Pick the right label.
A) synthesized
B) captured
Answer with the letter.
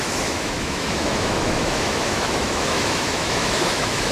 A